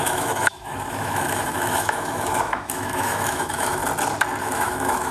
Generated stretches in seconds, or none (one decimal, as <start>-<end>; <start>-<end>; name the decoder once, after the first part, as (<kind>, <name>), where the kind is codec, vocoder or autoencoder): 0.0-3.8 (autoencoder, DAC-VAE); 4.4-5.1